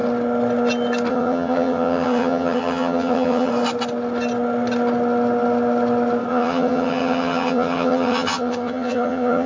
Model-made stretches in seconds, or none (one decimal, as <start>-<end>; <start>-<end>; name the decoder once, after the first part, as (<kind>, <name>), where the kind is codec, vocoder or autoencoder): 1.1-3.5 (vocoder, HiFi-GAN); 6.3-9.5